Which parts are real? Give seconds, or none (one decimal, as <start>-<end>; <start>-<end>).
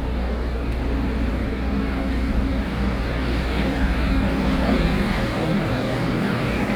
0.8-1.3